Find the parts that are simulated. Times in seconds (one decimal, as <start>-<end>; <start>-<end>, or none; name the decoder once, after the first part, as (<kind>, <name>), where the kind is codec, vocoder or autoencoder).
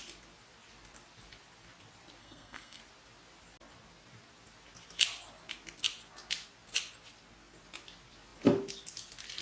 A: 2.2-2.8 (codec, SNAC)